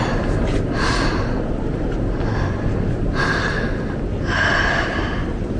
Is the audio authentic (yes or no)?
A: yes